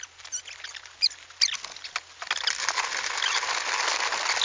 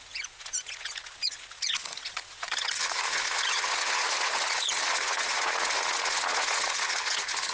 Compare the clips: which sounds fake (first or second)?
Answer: second